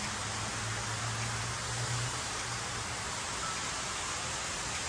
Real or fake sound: real